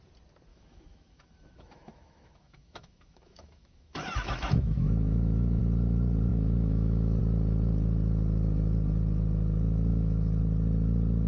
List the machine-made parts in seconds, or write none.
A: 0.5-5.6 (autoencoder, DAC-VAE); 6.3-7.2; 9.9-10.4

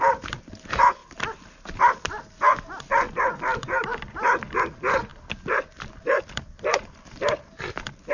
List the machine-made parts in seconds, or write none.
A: 0.0-1.0 (vocoder, BigVGAN v2); 4.6-5.1; 6.2-8.1

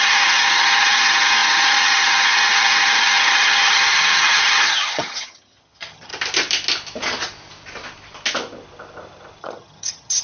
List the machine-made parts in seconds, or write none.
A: 0.0-6.1 (vocoder, HiFi-GAN); 9.4-10.2